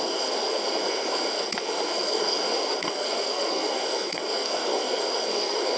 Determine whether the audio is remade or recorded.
remade